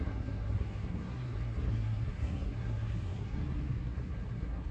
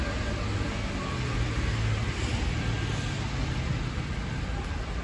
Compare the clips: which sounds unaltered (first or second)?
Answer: second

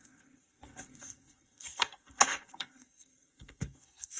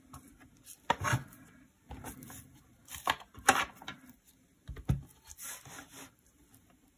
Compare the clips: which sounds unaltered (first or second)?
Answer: second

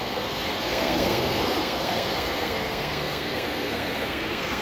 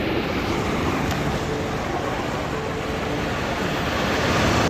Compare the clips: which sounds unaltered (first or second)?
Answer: second